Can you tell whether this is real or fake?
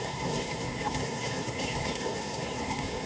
fake